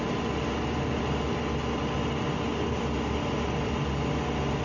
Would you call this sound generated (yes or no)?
no